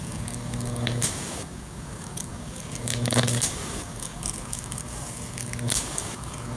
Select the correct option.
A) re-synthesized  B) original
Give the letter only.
A